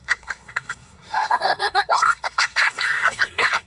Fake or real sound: fake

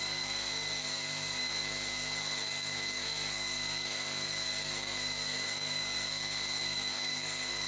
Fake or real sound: fake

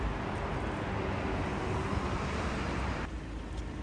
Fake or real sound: real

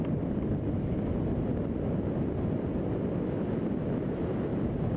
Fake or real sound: real